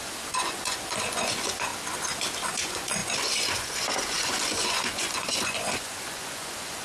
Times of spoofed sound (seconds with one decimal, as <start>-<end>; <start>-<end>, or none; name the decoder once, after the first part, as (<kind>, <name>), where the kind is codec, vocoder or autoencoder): 0.0-1.7 (vocoder, Vocos); 2.5-6.8